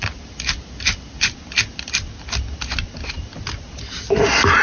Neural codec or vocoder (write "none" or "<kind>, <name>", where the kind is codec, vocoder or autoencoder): none